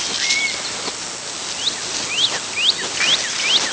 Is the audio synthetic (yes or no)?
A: no